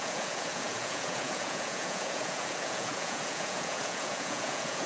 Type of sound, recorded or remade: remade